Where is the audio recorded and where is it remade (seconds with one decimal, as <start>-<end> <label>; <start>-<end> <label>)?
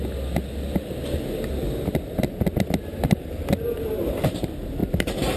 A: 0.0-4.8 recorded; 4.8-5.4 remade